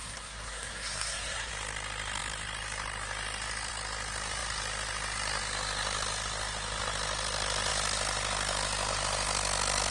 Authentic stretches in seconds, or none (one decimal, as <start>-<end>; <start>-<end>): 1.5-9.9